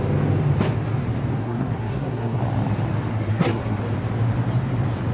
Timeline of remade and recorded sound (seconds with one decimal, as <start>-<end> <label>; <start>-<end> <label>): 0.0-1.4 recorded; 1.4-2.4 remade; 2.4-3.1 recorded; 3.1-3.8 remade; 3.8-5.1 recorded